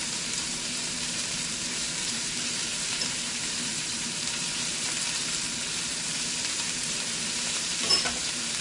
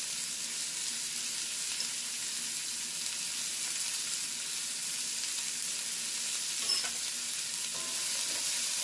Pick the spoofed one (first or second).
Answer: first